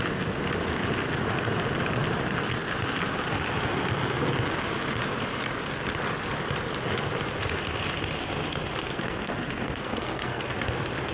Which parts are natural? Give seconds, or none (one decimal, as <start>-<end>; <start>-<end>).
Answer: 0.0-8.8; 10.4-11.1